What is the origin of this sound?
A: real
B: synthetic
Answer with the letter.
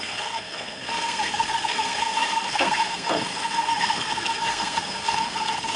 B